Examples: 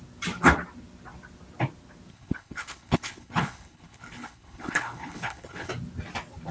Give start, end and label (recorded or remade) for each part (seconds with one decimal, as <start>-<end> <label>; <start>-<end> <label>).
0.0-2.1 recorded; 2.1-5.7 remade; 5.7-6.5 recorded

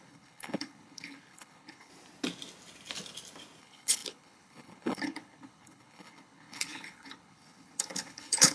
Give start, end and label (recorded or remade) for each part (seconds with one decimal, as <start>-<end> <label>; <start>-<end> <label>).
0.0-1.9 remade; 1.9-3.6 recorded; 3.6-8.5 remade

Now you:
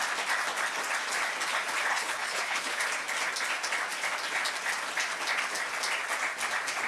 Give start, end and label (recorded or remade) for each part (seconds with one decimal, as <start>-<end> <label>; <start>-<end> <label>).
0.0-1.9 recorded; 1.9-2.8 remade; 2.8-6.9 recorded

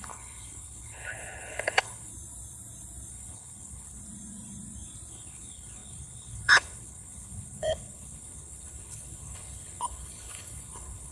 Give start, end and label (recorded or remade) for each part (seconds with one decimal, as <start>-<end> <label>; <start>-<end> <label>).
0.0-2.1 remade; 2.1-3.1 recorded; 3.1-4.0 remade; 4.0-5.1 recorded; 5.1-11.1 remade

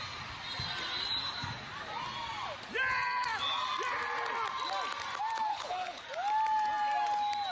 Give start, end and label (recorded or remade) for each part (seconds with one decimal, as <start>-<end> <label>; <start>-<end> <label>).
0.0-5.5 recorded; 5.5-6.0 remade; 6.0-7.5 recorded